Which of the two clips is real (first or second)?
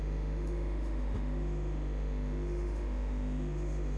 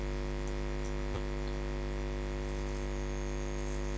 second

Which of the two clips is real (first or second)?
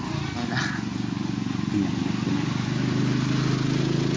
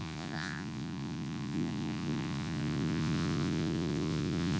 first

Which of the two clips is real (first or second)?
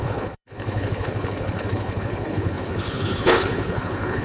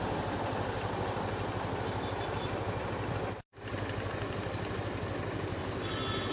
second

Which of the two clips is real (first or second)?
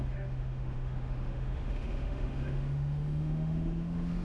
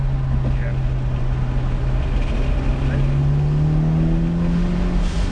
second